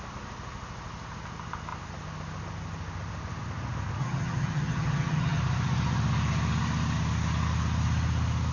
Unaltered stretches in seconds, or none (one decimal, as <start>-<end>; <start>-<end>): 0.0-4.0; 5.4-8.5